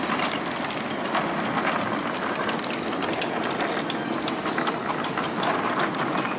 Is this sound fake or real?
real